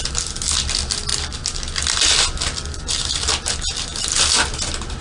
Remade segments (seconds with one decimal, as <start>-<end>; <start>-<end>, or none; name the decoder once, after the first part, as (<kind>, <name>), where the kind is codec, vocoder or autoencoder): none